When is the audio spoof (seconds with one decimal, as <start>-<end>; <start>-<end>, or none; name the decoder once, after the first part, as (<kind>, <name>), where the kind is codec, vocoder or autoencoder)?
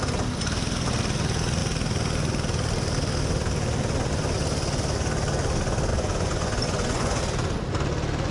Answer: 5.9-7.2 (vocoder, Vocos)